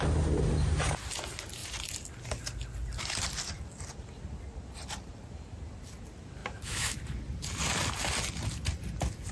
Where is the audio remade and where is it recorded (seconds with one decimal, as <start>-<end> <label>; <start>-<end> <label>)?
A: 0.0-6.4 recorded; 6.4-7.0 remade; 7.0-9.3 recorded